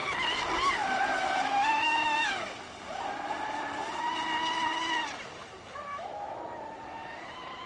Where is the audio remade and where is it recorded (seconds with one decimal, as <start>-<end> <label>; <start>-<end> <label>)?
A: 0.0-1.7 recorded; 1.7-2.3 remade; 2.3-5.9 recorded; 5.9-6.4 remade; 6.4-7.7 recorded